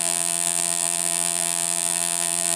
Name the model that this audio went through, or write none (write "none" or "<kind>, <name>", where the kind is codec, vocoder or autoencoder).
vocoder, BigVGAN v2